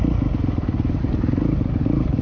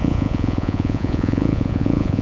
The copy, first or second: second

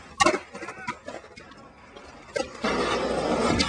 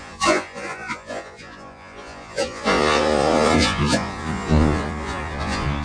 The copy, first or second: second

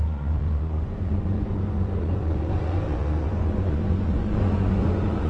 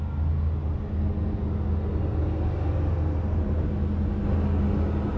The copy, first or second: first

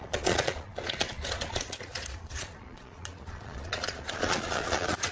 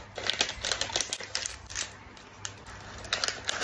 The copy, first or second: first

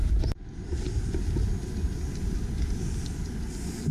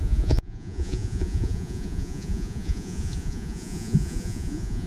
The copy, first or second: second